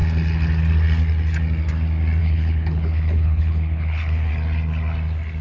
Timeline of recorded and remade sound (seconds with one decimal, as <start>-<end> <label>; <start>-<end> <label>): 0.0-2.2 recorded; 2.2-4.3 remade; 4.3-5.4 recorded